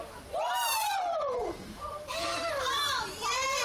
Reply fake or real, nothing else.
fake